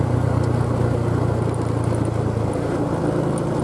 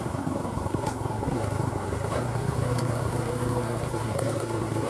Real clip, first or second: first